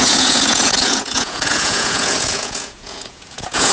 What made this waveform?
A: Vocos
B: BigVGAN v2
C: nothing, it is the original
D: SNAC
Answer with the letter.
A